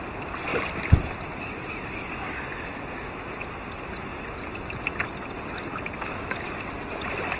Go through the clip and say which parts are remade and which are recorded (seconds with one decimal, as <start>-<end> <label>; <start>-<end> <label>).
0.0-0.5 recorded; 0.5-1.7 remade; 1.7-7.4 recorded